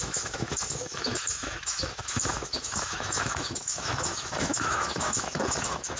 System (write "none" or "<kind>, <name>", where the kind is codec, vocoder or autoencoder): autoencoder, DAC-VAE